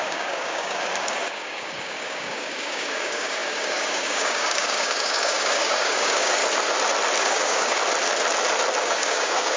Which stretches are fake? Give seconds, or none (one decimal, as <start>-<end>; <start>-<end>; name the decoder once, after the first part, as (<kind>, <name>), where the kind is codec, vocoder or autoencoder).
0.0-6.4 (codec, DAC); 7.2-7.8; 8.8-9.6